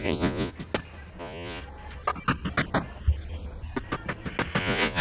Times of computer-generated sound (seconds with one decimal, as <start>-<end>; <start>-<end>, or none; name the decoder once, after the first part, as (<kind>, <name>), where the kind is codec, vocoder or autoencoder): 0.0-0.5 (vocoder, Vocos); 1.2-1.6; 4.6-5.0